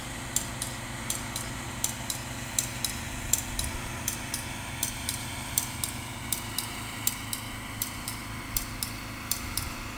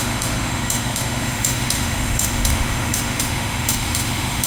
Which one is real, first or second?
first